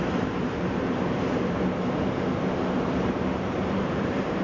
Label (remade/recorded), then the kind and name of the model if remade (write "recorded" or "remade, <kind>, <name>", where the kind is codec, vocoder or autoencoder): remade, vocoder, BigVGAN v2